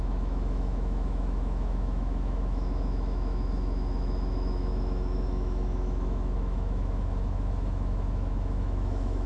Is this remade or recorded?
remade